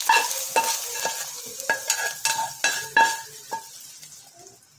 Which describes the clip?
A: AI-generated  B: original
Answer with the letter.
B